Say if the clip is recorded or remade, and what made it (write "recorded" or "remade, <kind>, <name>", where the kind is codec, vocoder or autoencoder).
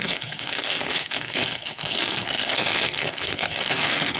remade, codec, SNAC